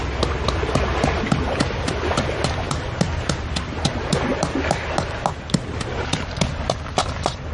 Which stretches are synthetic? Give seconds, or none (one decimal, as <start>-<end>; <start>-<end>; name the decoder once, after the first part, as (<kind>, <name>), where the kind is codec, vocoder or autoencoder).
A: none